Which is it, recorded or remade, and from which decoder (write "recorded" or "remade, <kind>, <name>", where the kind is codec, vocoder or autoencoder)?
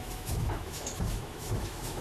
remade, autoencoder, DAC-VAE